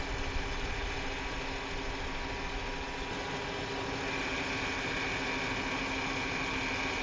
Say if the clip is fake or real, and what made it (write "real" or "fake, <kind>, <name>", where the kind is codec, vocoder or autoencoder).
real